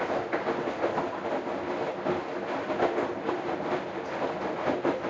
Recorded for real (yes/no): yes